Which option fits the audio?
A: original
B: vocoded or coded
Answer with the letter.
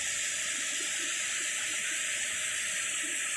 A